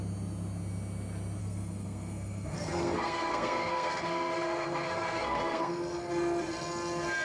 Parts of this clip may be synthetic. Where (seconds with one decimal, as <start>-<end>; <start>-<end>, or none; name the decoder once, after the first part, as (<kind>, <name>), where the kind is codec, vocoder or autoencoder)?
1.4-5.7 (codec, SNAC)